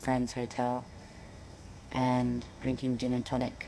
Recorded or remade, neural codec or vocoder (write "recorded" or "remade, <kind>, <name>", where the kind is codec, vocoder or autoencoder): remade, codec, SNAC